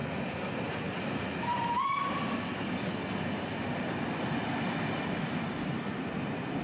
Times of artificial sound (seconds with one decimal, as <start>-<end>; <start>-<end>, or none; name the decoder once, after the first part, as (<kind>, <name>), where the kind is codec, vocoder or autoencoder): none